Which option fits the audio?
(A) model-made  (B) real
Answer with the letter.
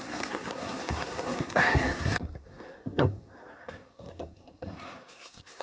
A